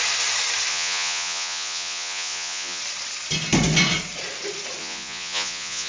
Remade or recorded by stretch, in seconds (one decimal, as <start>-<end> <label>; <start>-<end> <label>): 0.0-0.7 recorded; 0.7-2.8 remade; 2.8-4.8 recorded; 4.8-5.9 remade